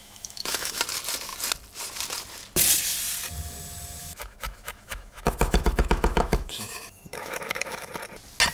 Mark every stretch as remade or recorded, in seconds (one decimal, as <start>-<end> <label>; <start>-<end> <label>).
0.0-0.8 remade; 0.8-4.0 recorded; 4.0-7.9 remade; 7.9-8.5 recorded

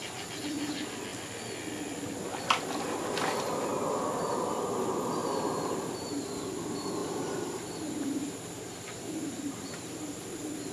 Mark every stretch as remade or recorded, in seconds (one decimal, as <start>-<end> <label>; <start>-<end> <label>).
0.0-5.2 recorded; 5.2-5.9 remade; 5.9-7.0 recorded; 7.0-10.0 remade; 10.0-10.7 recorded